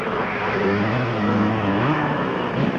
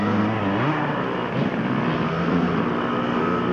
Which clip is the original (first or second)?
second